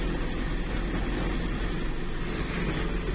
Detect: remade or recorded recorded